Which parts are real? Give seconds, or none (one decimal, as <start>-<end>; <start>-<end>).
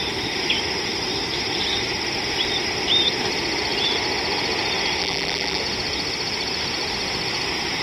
0.0-5.0; 5.6-7.8